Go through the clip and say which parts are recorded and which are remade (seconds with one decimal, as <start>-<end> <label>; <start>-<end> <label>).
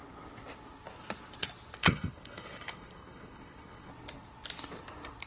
0.0-1.8 recorded; 1.8-3.9 remade; 3.9-5.3 recorded